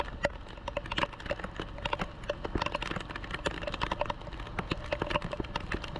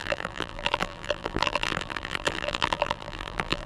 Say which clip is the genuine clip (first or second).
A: first